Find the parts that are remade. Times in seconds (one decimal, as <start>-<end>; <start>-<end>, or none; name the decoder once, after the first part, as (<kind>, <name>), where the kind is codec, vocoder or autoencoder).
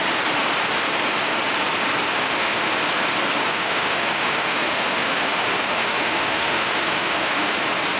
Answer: 2.0-2.7 (autoencoder, DAC-VAE); 3.5-7.5